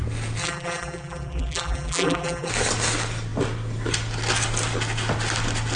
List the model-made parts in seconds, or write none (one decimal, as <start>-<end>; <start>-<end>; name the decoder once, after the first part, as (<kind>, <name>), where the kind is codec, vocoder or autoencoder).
0.4-2.5 (vocoder, BigVGAN v2)

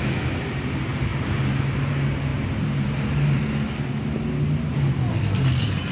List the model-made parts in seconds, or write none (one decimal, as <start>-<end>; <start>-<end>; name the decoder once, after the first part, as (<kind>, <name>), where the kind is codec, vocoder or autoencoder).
1.1-1.6 (vocoder, BigVGAN v2); 2.3-3.4

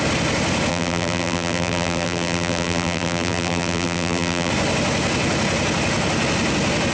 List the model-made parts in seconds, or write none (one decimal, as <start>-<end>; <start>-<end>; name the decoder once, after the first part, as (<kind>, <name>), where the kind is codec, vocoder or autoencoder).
0.7-4.5 (vocoder, BigVGAN v2)

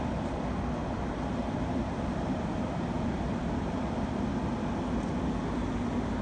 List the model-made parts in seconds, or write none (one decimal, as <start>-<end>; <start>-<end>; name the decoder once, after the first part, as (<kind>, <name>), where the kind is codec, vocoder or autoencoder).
0.8-3.7 (vocoder, BigVGAN v2)

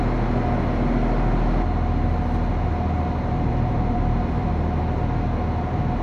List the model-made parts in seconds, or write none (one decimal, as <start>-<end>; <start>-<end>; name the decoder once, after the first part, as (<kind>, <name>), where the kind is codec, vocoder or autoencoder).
3.5-4.5 (vocoder, BigVGAN v2)

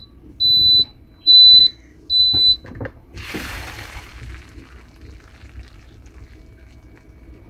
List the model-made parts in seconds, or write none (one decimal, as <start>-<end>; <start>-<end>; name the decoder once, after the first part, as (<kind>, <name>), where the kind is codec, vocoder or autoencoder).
0.9-1.6 (vocoder, BigVGAN v2); 2.2-4.2